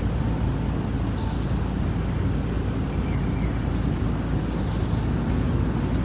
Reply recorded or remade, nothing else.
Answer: recorded